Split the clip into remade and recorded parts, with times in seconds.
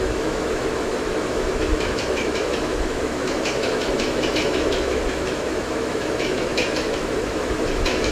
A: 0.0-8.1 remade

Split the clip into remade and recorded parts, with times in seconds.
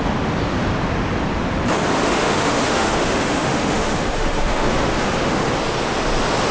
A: 0.0-1.9 recorded; 1.9-5.5 remade; 5.5-6.5 recorded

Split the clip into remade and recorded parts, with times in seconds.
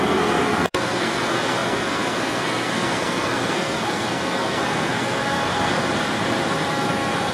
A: 0.0-5.8 remade; 5.8-6.7 recorded; 6.7-7.3 remade